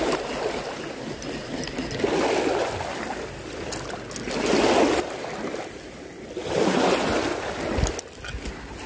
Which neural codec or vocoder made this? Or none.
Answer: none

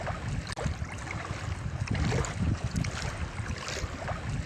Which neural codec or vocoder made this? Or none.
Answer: none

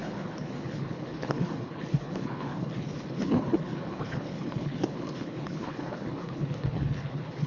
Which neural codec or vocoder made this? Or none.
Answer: codec, HILCodec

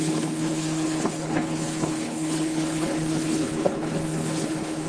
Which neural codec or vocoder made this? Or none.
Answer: codec, HILCodec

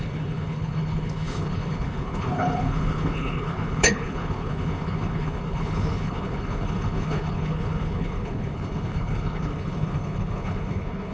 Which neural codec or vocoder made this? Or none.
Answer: codec, HILCodec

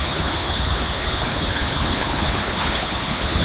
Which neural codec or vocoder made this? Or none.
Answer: codec, HILCodec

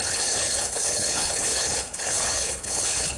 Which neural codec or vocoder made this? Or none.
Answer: codec, HILCodec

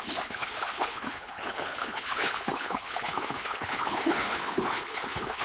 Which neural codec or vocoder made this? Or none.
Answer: codec, HILCodec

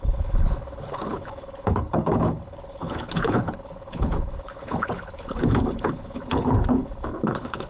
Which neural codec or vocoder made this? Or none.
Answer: codec, HILCodec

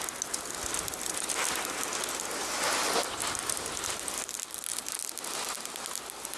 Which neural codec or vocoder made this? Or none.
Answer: none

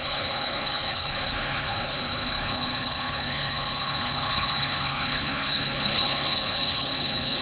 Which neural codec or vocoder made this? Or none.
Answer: codec, HILCodec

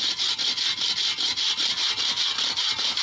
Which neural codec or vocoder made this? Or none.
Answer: none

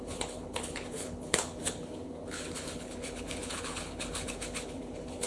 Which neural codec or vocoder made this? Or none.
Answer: codec, HILCodec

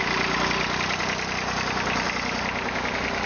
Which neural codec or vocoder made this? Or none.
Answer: none